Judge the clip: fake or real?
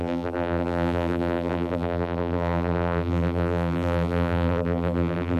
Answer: fake